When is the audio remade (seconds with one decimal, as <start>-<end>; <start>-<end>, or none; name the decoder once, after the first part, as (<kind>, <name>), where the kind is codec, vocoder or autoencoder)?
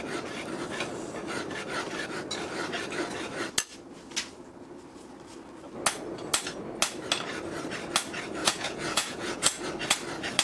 8.4-9.6 (vocoder, Vocos)